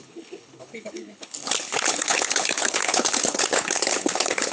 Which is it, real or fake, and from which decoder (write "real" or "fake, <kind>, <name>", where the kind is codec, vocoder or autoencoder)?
fake, codec, HILCodec